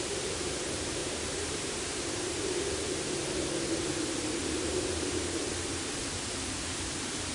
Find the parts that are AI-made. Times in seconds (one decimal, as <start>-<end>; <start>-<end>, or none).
0.0-3.2; 4.4-5.5; 6.0-7.3